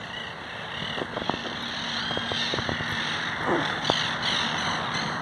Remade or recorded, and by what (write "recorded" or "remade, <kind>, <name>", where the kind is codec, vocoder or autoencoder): recorded